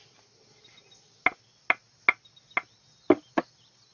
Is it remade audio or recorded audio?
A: recorded